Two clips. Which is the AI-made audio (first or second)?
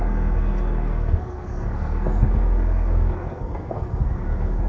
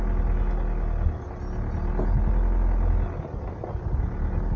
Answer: first